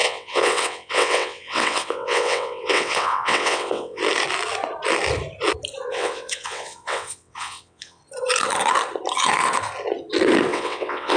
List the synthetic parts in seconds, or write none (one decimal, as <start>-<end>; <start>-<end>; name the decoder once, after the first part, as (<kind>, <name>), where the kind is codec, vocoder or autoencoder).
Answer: 0.0-4.0 (vocoder, WaveNeXt); 5.9-8.0; 10.5-11.2